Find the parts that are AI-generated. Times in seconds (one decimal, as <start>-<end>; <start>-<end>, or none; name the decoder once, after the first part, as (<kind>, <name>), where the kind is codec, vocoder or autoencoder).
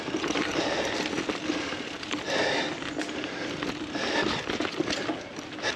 none